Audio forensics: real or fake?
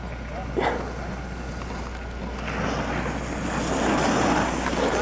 real